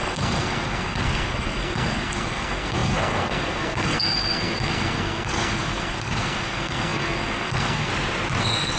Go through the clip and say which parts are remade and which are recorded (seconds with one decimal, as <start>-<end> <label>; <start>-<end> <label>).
0.0-7.9 remade; 7.9-8.4 recorded; 8.4-8.8 remade